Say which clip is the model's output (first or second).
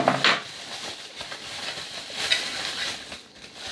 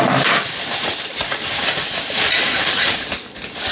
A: second